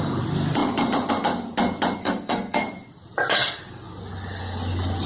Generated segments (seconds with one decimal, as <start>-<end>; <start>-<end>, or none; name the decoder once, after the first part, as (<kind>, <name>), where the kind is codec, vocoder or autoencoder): 2.0-2.6 (codec, SNAC)

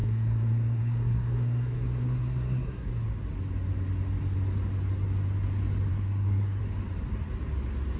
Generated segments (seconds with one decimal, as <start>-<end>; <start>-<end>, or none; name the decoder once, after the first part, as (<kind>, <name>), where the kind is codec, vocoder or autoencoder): 0.0-2.9 (codec, SNAC); 5.9-6.6

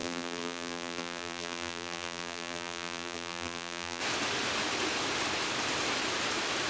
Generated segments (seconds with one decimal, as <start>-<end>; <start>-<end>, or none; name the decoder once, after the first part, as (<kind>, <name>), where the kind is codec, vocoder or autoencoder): 0.0-4.0 (vocoder, BigVGAN v2)

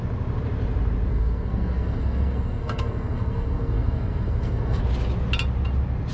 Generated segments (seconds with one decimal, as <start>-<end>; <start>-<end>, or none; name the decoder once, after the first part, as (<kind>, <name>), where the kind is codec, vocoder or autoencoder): 1.1-4.8 (codec, SNAC)

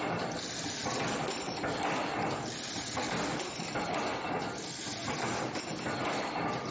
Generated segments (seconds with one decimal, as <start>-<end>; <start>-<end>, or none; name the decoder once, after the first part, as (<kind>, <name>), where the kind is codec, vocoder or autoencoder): none

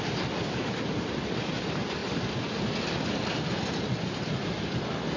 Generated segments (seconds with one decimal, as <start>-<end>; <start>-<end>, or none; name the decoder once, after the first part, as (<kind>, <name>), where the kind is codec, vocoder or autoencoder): none

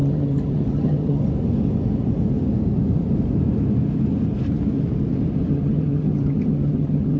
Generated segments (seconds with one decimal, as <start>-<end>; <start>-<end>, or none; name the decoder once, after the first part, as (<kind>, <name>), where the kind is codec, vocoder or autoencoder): 0.0-1.2 (vocoder, HiFi-GAN); 5.5-7.2

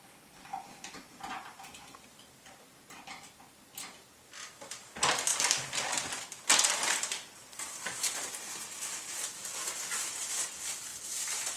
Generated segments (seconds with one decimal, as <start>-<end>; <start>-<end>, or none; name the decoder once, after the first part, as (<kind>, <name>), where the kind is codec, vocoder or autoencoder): 5.3-9.3 (vocoder, BigVGAN v2)